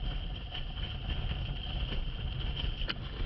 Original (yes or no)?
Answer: yes